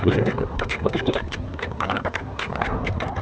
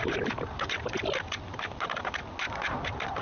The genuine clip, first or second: second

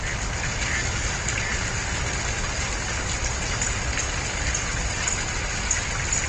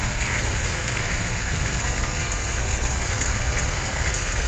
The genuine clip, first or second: first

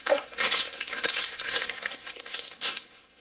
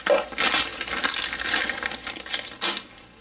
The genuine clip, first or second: second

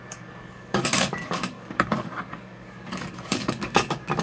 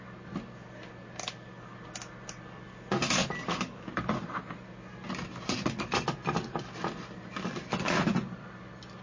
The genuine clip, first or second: second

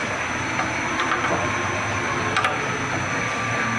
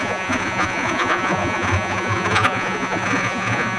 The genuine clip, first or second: first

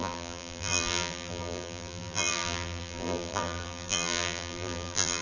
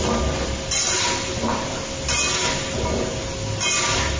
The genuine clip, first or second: second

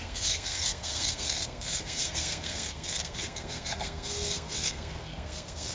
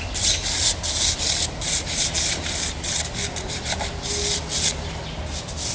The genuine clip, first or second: second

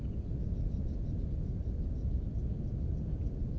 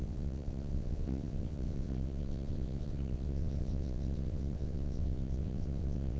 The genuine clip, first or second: first